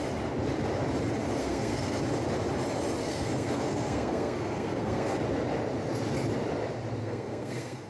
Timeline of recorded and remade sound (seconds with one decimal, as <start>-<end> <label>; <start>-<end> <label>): 0.0-1.4 recorded; 1.4-2.0 remade; 2.0-3.0 recorded; 3.0-5.2 remade; 5.2-7.0 recorded; 7.0-7.9 remade